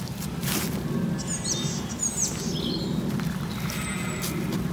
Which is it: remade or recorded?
recorded